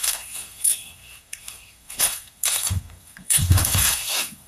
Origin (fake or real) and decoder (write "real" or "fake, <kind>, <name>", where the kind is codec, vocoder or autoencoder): fake, codec, SNAC